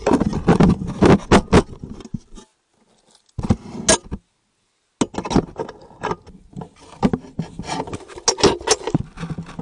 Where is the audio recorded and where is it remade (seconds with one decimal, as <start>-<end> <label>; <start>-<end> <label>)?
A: 0.0-9.6 recorded